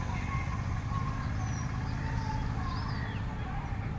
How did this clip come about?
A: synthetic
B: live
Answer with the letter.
B